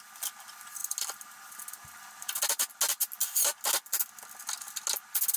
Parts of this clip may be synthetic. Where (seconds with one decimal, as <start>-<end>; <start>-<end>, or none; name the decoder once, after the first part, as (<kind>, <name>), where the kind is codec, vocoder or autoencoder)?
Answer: none